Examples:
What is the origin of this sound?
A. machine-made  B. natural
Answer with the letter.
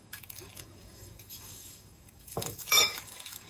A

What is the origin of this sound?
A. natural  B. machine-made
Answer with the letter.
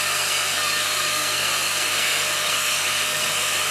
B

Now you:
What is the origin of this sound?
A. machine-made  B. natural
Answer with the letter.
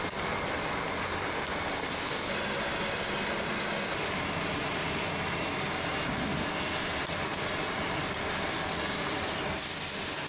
B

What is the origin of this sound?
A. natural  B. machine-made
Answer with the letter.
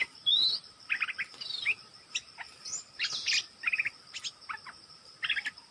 A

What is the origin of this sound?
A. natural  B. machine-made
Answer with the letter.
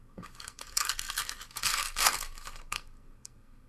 B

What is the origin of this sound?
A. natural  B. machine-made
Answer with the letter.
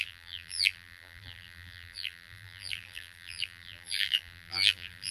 B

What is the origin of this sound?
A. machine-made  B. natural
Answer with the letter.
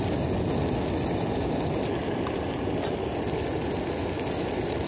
B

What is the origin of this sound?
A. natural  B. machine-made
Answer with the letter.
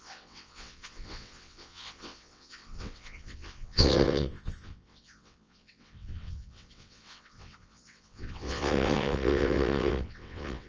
B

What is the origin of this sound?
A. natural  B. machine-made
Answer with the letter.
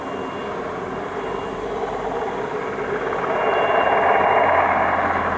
A